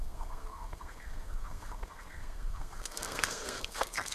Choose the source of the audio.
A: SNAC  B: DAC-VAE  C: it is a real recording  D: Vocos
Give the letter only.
A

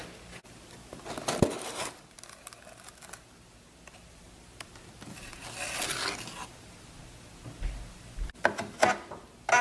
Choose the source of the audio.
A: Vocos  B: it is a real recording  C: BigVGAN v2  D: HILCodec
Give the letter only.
B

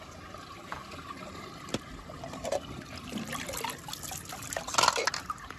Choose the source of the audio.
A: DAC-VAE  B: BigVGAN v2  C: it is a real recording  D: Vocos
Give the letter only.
C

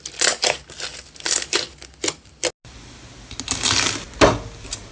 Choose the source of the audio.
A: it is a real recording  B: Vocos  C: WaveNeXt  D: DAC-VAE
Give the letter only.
A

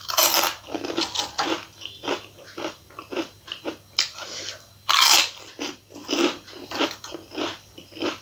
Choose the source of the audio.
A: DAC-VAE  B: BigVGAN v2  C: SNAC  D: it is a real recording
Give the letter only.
D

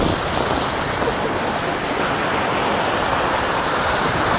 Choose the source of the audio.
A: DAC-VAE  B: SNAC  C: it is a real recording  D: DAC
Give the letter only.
C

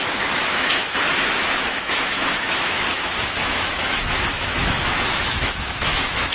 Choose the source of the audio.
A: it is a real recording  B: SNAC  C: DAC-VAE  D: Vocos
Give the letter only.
C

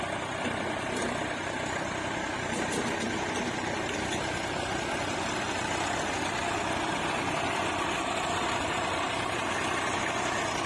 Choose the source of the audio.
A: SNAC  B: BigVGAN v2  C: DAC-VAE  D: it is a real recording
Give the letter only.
D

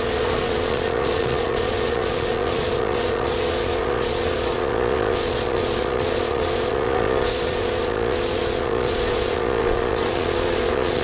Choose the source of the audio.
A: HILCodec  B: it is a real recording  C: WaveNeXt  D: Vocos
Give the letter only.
D